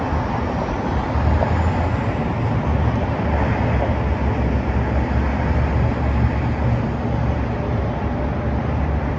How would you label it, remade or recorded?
recorded